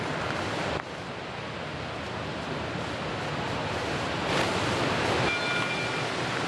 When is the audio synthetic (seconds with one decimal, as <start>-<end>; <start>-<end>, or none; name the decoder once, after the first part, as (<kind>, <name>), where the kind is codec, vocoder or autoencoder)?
none